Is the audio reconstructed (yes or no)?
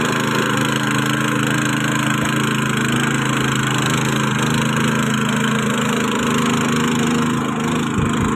no